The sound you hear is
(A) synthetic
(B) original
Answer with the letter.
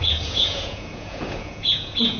A